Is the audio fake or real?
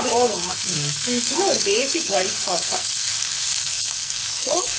fake